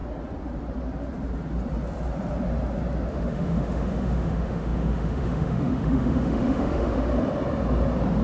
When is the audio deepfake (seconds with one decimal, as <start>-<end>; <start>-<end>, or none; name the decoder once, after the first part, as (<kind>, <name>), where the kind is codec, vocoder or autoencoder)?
3.1-7.1 (autoencoder, DAC-VAE)